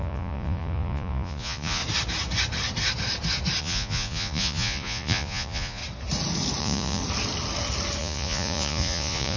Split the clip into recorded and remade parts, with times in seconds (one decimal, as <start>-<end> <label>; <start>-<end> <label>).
0.0-1.8 remade; 1.8-3.6 recorded; 3.6-5.8 remade; 5.8-6.6 recorded; 6.6-7.0 remade; 7.0-8.0 recorded; 8.0-9.4 remade